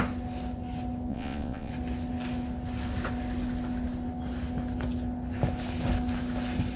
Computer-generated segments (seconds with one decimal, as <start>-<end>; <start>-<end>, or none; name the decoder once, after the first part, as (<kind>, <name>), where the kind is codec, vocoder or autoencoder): 1.1-1.7 (vocoder, Vocos)